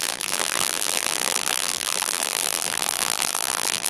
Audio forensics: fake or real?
fake